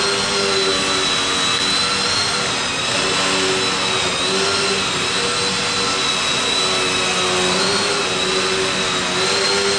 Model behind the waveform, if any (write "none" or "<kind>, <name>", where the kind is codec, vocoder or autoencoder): none